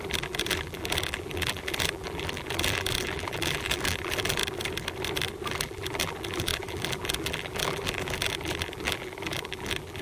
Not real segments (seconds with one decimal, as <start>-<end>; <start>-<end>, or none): 0.0-4.4; 5.5-10.0